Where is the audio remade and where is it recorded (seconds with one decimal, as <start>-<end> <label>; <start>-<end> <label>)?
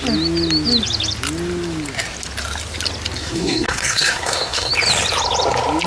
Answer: 0.0-3.2 recorded; 3.2-4.7 remade; 4.7-5.9 recorded